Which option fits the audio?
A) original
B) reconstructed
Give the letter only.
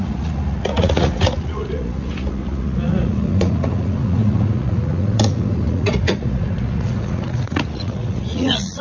B